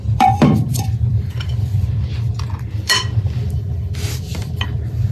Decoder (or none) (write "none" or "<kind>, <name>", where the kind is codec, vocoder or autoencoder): vocoder, BigVGAN v2